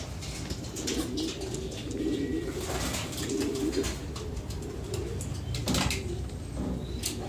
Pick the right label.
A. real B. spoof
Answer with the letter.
A